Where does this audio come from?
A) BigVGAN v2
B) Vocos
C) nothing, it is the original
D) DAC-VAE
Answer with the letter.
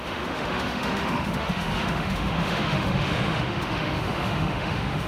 D